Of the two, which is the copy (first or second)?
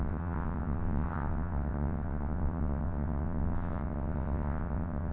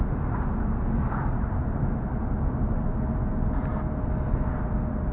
first